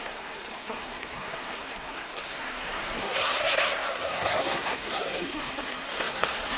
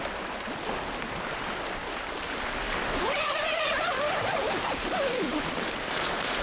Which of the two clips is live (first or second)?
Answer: second